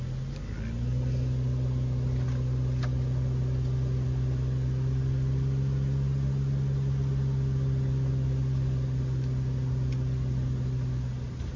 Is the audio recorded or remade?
recorded